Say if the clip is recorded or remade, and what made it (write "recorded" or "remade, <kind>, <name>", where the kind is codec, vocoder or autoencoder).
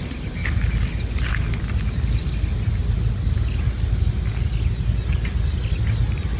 recorded